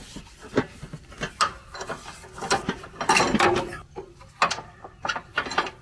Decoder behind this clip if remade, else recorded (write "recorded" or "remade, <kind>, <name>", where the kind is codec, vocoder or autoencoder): recorded